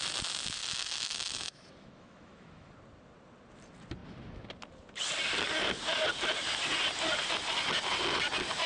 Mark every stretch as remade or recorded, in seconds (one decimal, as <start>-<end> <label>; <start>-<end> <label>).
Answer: 0.0-0.6 recorded; 0.6-2.7 remade; 2.7-8.7 recorded

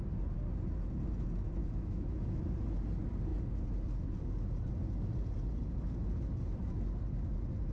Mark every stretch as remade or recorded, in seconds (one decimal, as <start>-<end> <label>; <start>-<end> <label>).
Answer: 0.0-1.6 recorded; 1.6-2.4 remade; 2.4-7.7 recorded

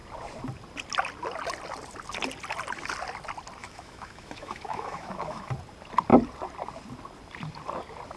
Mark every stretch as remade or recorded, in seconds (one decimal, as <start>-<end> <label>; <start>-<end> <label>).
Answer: 0.0-3.6 recorded; 3.6-5.5 remade; 5.5-8.2 recorded

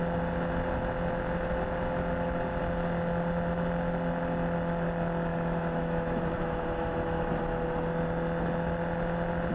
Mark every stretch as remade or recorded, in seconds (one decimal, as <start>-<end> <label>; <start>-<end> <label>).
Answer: 0.0-5.3 recorded; 5.3-7.2 remade; 7.2-9.5 recorded

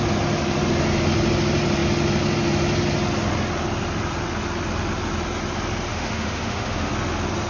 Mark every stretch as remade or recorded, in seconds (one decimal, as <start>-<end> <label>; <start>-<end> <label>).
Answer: 0.0-5.9 recorded; 5.9-6.9 remade; 6.9-7.5 recorded

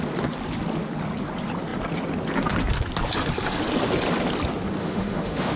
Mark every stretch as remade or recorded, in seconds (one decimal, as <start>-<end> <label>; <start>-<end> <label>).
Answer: 0.0-4.8 recorded; 4.8-5.6 remade

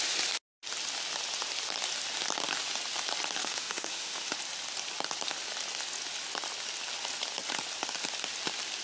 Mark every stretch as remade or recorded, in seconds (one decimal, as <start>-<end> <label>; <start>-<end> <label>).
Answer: 0.0-3.4 recorded; 3.4-4.3 remade; 4.3-8.8 recorded